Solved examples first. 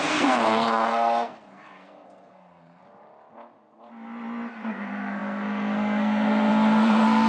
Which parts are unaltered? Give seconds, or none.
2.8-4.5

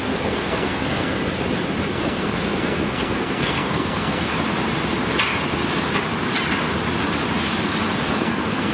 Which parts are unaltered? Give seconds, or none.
1.2-1.9; 4.3-8.1

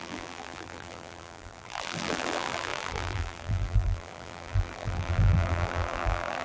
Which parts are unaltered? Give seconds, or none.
none

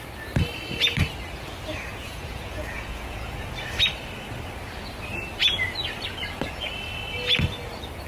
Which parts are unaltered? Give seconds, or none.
0.0-1.9; 3.5-8.1

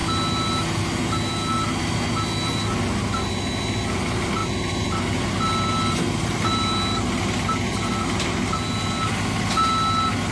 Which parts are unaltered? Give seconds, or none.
0.0-10.3

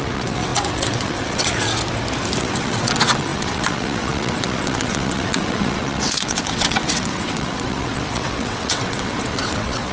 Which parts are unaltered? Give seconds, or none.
1.7-2.4

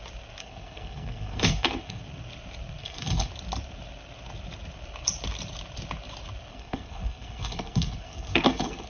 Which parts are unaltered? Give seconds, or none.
0.0-0.4; 2.0-2.8; 3.3-6.5